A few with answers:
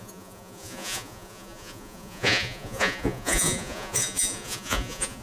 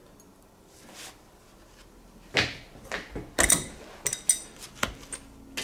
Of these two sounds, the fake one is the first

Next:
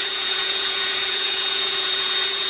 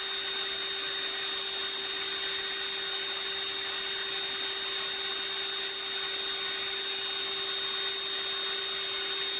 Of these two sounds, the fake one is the first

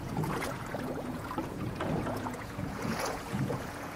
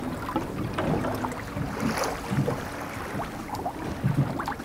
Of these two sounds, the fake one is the first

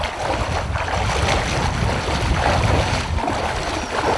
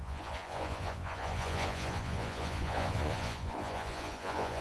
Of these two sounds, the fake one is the second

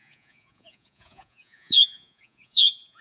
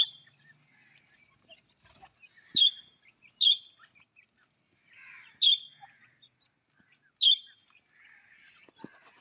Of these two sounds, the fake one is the first